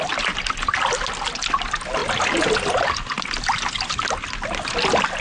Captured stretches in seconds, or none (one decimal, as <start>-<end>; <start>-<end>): 0.0-5.2